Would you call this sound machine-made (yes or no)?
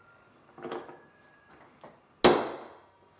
no